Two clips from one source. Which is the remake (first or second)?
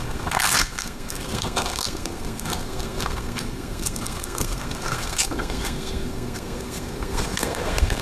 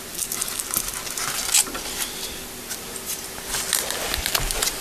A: first